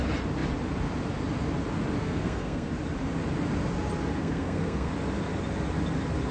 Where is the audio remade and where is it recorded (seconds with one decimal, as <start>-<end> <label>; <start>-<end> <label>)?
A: 0.0-2.0 recorded; 2.0-2.7 remade; 2.7-4.2 recorded; 4.2-4.9 remade; 4.9-6.3 recorded